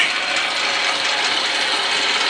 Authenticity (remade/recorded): recorded